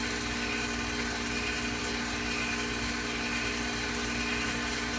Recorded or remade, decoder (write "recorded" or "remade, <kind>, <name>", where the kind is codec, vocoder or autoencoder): recorded